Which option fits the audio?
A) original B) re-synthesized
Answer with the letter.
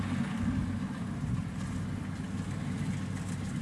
A